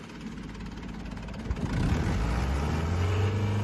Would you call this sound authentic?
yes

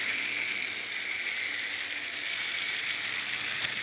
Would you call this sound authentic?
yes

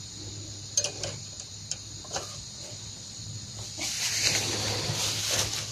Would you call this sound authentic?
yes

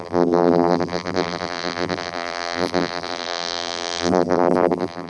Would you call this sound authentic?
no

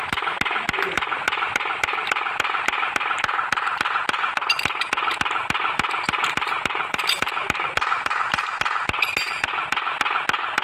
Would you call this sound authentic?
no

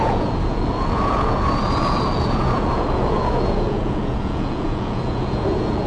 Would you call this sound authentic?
no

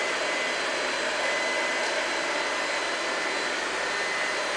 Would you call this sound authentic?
yes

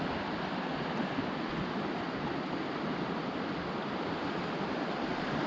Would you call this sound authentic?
no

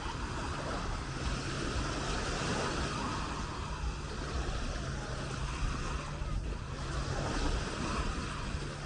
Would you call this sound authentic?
yes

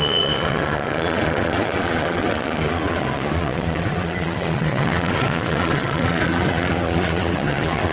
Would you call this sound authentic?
no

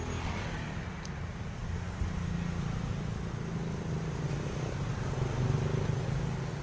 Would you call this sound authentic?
yes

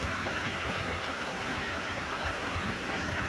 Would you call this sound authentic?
no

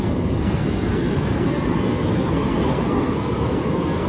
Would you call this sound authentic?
no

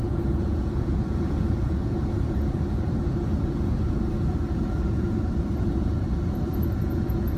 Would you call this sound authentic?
no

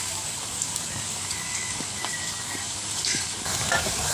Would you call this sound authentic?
no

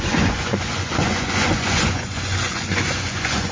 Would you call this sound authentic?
no